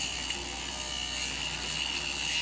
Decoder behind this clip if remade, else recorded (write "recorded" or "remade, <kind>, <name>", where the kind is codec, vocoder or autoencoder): recorded